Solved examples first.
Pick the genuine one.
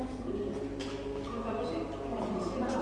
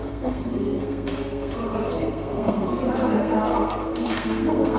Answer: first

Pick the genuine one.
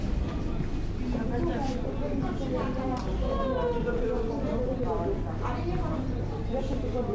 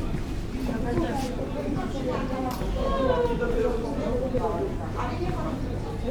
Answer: first